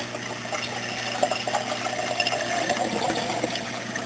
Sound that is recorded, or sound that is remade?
recorded